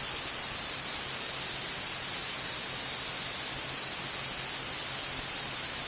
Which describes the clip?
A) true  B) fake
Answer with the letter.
A